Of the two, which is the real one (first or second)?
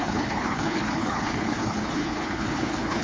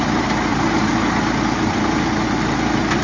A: second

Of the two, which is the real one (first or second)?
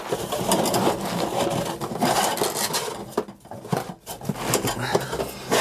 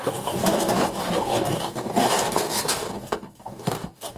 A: first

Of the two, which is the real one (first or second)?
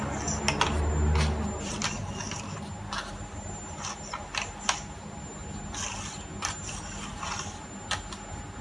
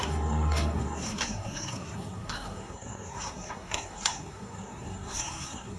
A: first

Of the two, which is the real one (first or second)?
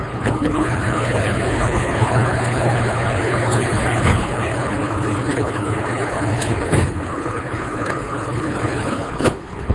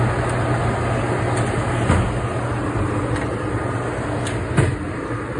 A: second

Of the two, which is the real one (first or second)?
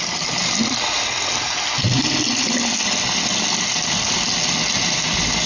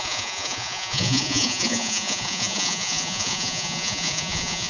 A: first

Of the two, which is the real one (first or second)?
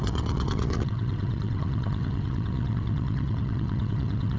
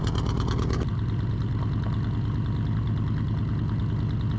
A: second